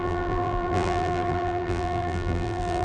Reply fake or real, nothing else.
fake